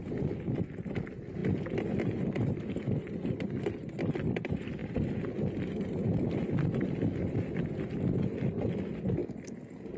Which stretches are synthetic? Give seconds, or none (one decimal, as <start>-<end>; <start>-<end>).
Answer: none